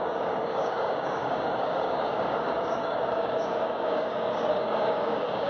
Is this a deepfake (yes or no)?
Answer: yes